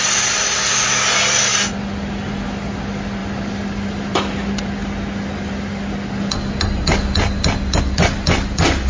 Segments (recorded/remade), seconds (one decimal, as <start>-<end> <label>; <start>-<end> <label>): 0.0-8.9 recorded